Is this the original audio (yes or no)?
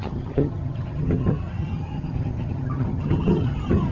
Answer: no